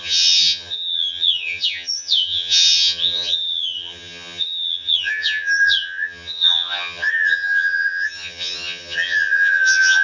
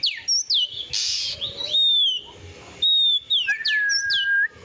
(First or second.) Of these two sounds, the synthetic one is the first